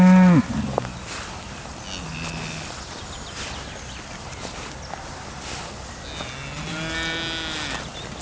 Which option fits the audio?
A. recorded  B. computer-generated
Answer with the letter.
A